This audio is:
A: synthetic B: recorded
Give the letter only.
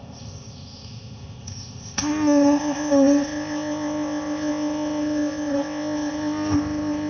A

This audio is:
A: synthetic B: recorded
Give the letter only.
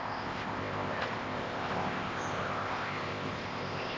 A